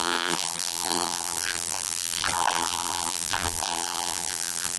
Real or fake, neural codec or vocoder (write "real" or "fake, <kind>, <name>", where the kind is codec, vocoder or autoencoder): fake, vocoder, BigVGAN v2